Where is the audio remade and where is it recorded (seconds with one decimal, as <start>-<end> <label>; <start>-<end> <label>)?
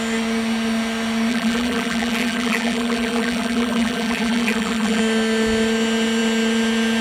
0.0-1.3 recorded; 1.3-5.0 remade; 5.0-7.0 recorded